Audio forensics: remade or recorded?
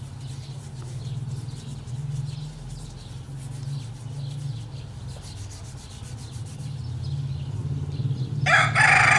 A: recorded